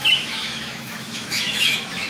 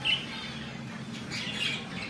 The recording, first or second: second